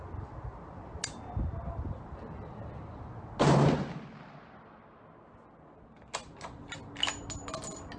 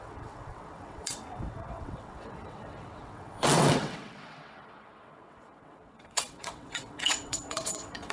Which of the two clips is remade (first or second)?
second